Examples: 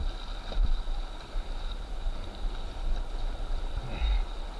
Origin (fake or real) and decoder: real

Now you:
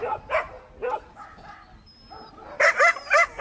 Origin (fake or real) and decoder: real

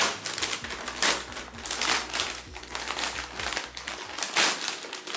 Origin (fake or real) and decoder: real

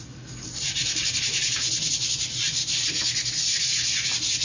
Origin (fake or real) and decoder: real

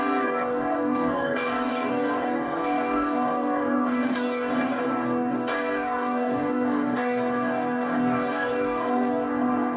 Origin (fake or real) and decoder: fake, codec, DAC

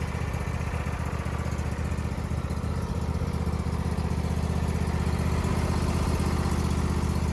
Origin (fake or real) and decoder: real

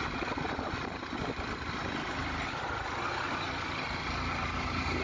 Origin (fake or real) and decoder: real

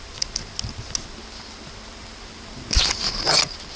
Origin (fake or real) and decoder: real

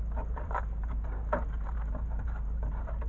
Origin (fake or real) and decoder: fake, vocoder, BigVGAN v2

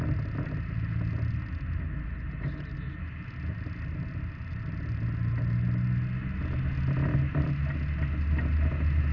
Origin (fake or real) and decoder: real